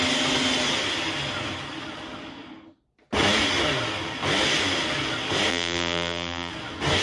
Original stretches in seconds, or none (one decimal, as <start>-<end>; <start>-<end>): 0.0-5.5; 6.5-7.0